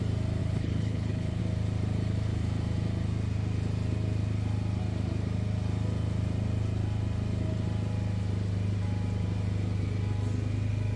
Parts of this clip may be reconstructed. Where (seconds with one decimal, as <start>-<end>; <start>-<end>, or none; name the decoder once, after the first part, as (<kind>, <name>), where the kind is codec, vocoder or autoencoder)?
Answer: 0.4-1.4 (codec, HILCodec)